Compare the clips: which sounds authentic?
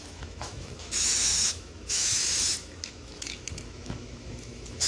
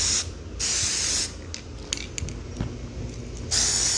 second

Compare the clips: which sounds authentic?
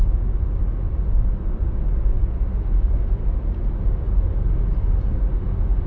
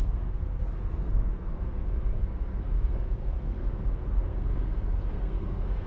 first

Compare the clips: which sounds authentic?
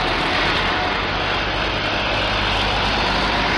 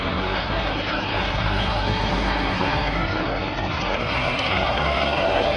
first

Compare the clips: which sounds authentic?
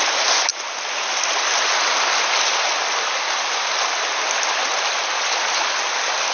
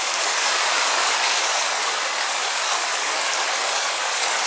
first